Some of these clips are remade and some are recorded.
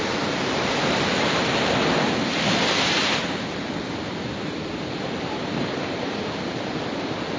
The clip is recorded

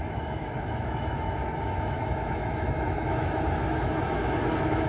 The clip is remade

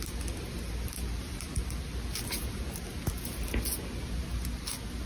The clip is recorded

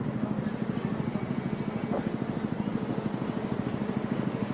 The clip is recorded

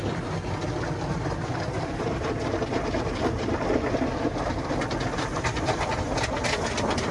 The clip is recorded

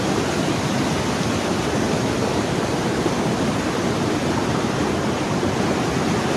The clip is recorded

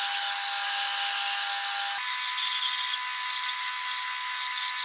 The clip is recorded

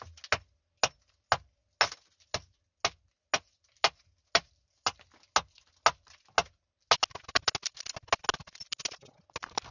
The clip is recorded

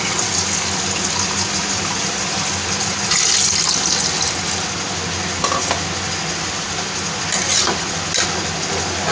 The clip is recorded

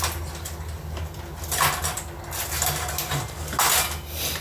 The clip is recorded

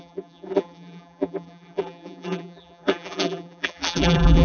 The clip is remade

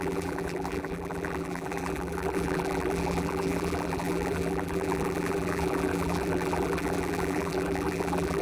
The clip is remade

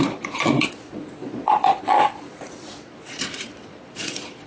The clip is remade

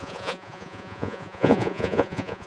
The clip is remade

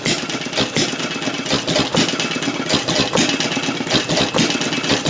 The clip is recorded